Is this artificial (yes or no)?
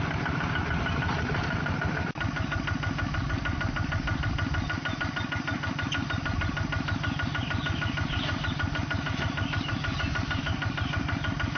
no